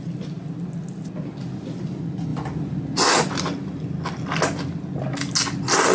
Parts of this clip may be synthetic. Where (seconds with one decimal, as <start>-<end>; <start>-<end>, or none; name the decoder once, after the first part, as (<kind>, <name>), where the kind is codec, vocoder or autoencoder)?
none